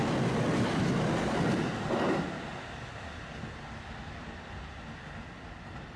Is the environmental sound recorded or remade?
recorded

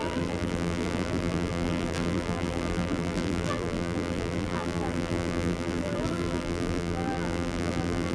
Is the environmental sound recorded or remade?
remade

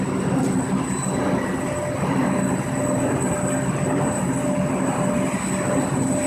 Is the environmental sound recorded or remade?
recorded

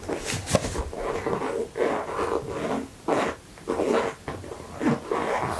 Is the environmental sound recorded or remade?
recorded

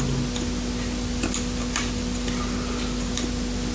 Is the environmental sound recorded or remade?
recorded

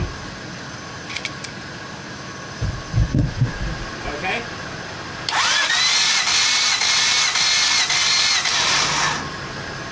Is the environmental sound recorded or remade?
recorded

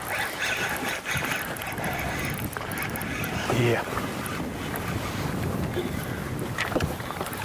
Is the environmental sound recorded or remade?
recorded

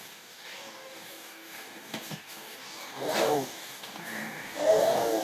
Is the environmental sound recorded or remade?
remade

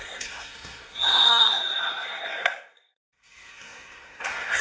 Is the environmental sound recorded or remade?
remade